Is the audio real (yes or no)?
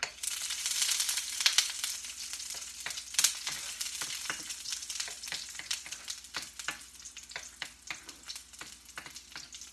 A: yes